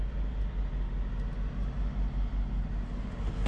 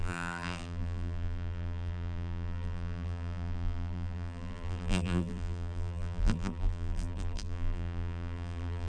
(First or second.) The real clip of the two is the first